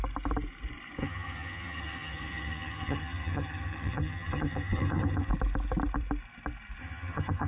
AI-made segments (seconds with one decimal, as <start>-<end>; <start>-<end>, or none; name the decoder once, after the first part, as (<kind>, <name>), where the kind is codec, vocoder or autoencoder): 1.0-5.3 (vocoder, HiFi-GAN); 6.8-7.5